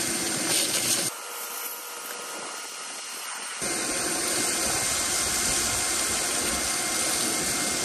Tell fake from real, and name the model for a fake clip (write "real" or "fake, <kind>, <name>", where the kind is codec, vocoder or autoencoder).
real